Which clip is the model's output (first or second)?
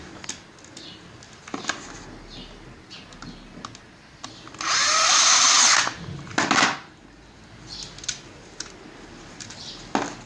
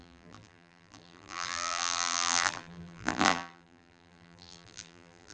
second